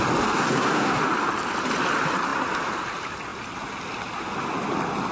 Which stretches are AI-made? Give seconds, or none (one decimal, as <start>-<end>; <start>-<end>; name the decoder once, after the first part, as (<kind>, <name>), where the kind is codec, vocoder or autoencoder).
0.4-1.0 (codec, SNAC)

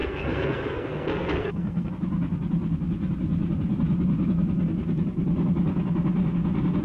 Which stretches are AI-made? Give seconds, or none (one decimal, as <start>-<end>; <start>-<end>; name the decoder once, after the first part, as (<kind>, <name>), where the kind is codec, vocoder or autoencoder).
0.0-1.9 (codec, SNAC)

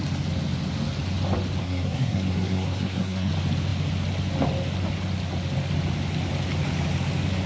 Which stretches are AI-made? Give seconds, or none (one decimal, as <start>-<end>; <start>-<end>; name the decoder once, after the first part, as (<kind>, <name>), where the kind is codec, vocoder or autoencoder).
1.6-3.3 (codec, SNAC)